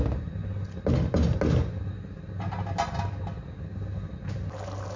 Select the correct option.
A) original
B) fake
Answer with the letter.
A